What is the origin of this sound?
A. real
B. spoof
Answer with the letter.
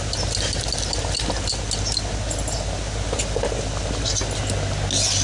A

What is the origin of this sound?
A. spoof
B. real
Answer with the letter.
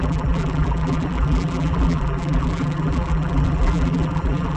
A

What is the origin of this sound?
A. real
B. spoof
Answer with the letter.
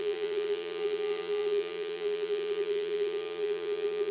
B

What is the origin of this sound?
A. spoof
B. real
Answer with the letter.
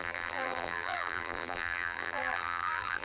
A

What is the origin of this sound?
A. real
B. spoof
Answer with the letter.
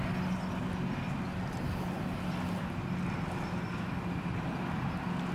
A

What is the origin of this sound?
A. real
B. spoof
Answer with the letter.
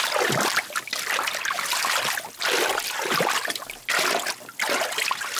A